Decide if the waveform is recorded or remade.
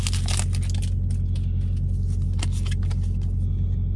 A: recorded